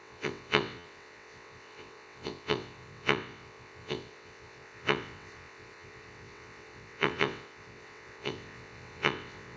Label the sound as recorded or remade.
remade